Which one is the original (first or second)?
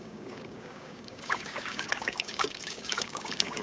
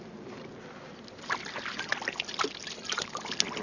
second